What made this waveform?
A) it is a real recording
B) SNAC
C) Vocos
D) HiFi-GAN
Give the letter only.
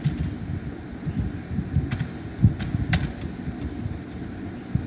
A